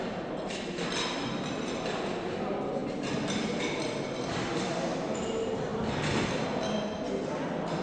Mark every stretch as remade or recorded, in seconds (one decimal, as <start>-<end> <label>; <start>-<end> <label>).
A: 0.0-7.8 recorded